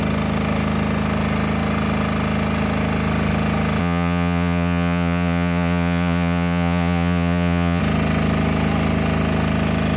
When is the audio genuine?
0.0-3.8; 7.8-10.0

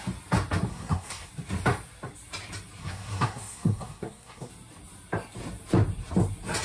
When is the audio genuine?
0.0-0.7; 1.3-2.8; 4.5-6.6

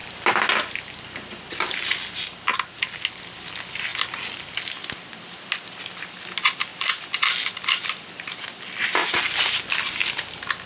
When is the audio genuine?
0.0-6.7; 9.9-10.7

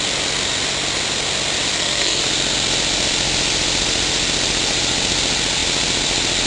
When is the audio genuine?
0.0-1.7; 2.2-6.5

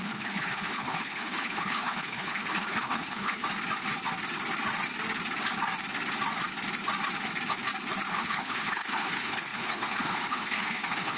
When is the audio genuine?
3.4-8.1

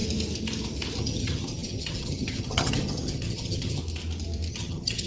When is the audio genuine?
0.0-1.0; 3.8-4.5

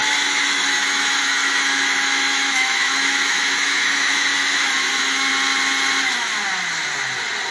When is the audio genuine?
5.3-7.5

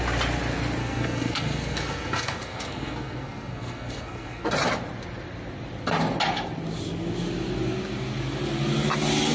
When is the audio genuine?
0.0-0.8; 4.5-9.3